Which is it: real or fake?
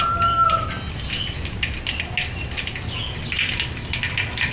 real